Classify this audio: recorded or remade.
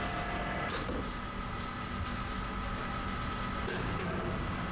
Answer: recorded